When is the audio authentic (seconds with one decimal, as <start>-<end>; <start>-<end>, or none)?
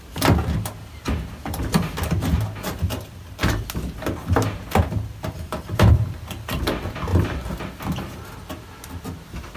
0.0-5.1; 6.6-9.6